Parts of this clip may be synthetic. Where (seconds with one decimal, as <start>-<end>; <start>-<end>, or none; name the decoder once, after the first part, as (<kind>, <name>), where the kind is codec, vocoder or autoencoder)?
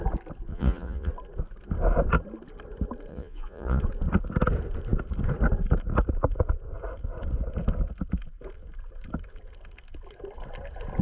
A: 0.5-1.1 (vocoder, Vocos); 3.1-3.8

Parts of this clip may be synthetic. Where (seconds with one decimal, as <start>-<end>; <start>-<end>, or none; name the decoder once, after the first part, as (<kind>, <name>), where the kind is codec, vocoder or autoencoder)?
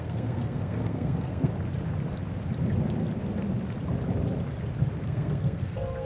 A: 0.0-1.5 (codec, SNAC); 5.0-6.1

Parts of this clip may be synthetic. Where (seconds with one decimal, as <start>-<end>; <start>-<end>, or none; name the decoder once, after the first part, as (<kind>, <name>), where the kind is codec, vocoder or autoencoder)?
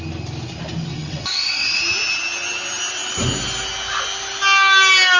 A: 0.9-1.8 (vocoder, WaveNeXt)